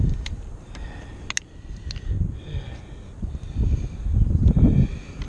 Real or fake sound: real